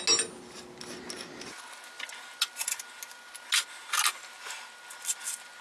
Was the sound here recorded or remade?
recorded